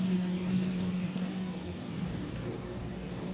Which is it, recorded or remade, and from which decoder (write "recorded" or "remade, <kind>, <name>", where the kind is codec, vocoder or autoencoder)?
remade, codec, DAC